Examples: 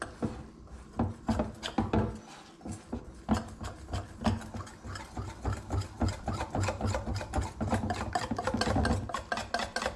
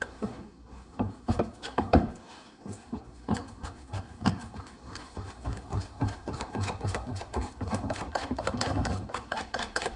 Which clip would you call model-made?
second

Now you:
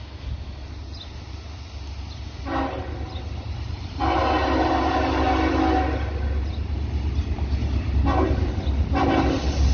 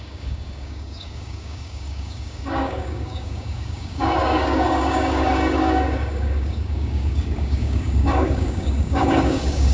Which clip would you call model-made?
second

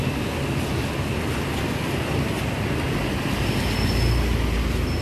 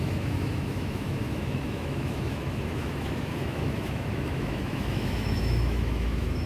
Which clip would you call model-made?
second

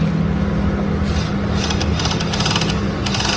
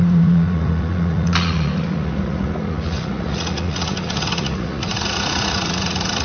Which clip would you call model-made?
second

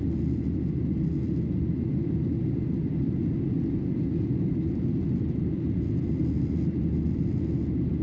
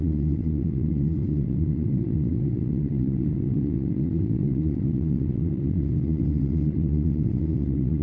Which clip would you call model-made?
second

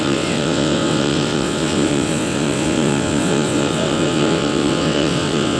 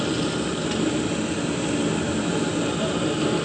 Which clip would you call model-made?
first